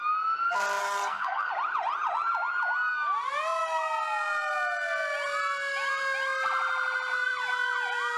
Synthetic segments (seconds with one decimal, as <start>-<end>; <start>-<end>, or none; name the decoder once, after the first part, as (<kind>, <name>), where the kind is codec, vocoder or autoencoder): 0.8-1.5 (codec, SNAC)